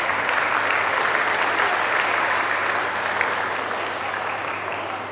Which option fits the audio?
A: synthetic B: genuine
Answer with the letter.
B